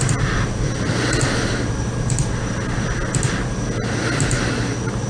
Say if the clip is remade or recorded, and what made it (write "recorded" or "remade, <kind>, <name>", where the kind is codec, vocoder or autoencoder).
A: recorded